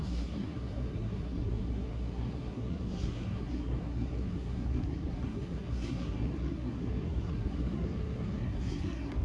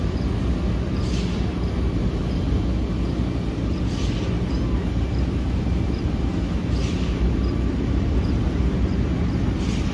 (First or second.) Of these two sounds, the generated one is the first